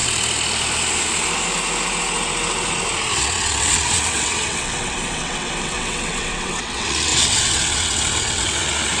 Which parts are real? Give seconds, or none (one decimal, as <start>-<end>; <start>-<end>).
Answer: 0.0-3.1